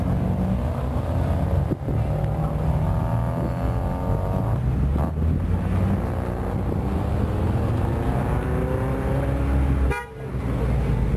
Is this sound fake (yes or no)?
no